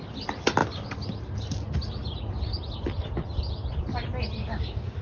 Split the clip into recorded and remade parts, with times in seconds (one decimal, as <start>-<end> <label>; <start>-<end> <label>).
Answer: 0.0-4.4 recorded; 4.4-5.0 remade